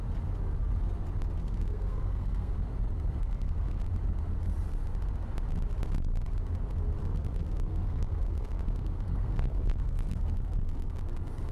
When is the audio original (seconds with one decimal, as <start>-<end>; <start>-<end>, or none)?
0.0-1.4; 2.5-3.2; 3.8-7.0; 10.9-11.5